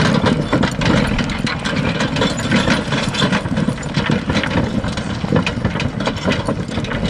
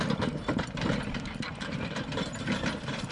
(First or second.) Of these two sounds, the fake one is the second